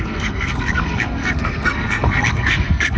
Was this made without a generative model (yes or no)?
no